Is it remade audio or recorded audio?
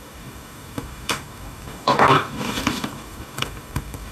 remade